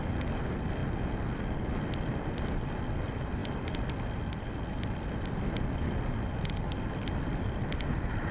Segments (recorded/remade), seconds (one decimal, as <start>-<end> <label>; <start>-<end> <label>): 0.0-8.3 recorded